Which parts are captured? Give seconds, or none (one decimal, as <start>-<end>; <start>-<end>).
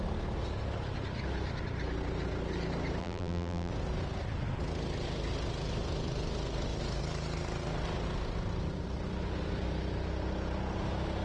0.0-3.0; 3.7-11.2